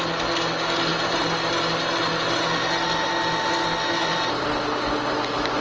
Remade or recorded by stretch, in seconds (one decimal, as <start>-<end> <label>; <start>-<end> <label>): 0.0-5.6 recorded